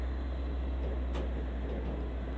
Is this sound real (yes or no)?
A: yes